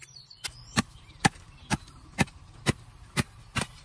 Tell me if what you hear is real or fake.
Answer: real